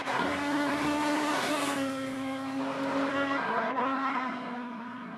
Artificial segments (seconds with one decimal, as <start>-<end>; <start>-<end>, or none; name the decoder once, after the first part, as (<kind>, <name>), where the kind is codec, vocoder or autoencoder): 0.0-2.6 (codec, SNAC); 3.1-5.2